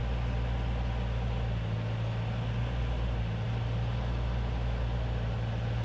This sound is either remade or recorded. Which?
recorded